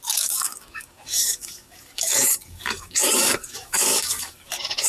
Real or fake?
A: fake